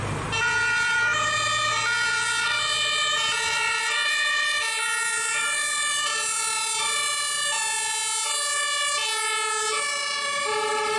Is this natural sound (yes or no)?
yes